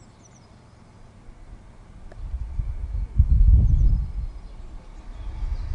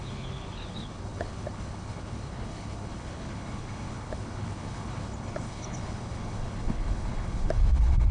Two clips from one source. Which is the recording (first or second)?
first